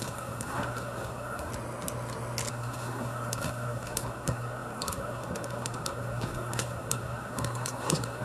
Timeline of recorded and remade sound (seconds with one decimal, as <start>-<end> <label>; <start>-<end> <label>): 0.0-1.5 remade; 1.5-2.5 recorded; 2.5-8.2 remade